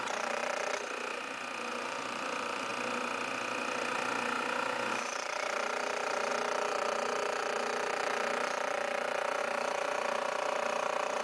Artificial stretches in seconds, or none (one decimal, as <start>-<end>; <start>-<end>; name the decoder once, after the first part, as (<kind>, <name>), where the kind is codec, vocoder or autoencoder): 0.0-0.4 (vocoder, BigVGAN v2); 1.7-2.7; 4.9-6.3; 9.4-11.2